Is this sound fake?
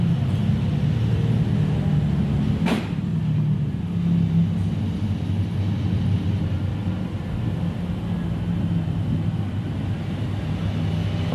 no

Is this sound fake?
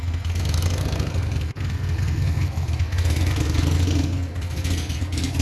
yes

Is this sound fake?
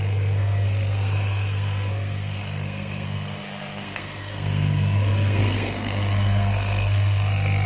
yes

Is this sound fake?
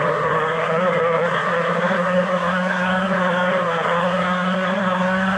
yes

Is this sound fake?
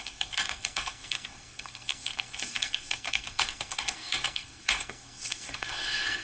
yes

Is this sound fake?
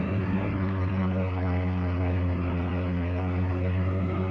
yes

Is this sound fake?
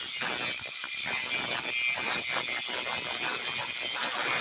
no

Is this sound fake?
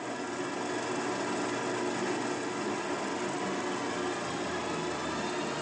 no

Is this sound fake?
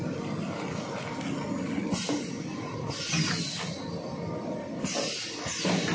no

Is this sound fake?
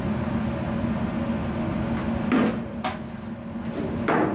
no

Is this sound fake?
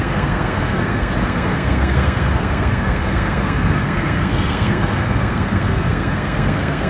yes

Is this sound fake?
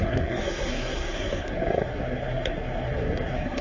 yes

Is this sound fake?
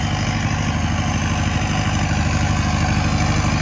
no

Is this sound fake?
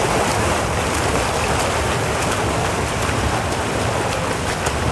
no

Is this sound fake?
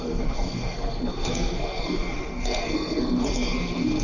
yes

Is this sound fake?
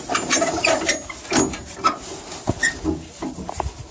no